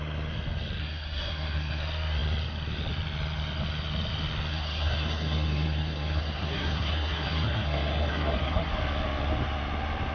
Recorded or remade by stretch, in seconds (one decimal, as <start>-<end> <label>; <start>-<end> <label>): 0.0-0.8 recorded; 0.8-1.8 remade; 1.8-4.5 recorded; 4.5-8.7 remade; 8.7-10.1 recorded